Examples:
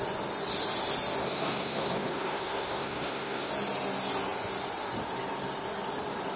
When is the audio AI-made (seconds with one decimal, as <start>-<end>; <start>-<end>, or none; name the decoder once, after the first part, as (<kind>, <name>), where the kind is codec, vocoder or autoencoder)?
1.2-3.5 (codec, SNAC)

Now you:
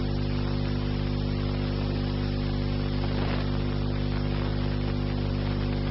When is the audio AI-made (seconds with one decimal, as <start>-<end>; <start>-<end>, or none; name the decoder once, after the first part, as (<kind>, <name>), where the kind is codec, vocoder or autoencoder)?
none

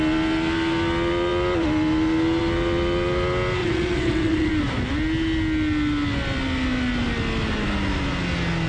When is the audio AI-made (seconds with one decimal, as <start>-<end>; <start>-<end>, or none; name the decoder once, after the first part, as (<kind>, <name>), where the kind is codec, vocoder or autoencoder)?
3.6-4.5 (vocoder, WaveNeXt)

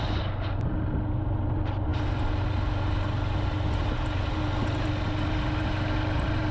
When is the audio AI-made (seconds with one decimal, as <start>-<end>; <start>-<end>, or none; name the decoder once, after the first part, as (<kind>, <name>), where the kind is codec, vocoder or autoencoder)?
none